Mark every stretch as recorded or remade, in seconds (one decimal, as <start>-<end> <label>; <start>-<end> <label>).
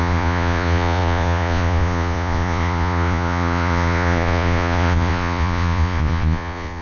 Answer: 0.0-6.8 remade